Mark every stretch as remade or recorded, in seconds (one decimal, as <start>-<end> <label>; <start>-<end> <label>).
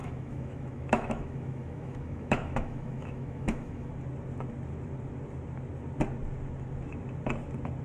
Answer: 0.0-3.9 remade; 3.9-7.8 recorded